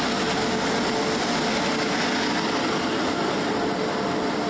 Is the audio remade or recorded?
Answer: recorded